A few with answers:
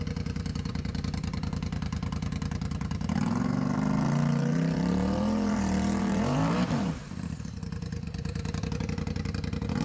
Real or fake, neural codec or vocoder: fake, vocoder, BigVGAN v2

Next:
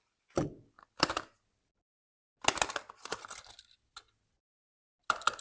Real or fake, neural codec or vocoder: real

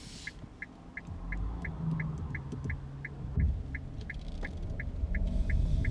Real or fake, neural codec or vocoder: real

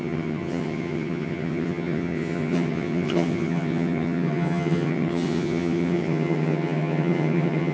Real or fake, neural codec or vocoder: fake, vocoder, HiFi-GAN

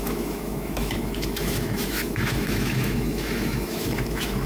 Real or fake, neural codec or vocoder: fake, autoencoder, DAC-VAE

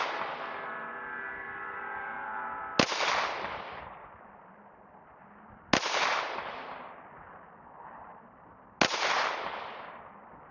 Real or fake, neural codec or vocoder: real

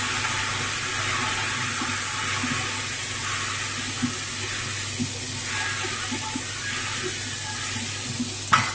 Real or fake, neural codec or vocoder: real